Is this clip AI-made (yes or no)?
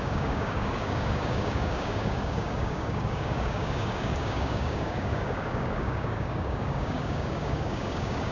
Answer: yes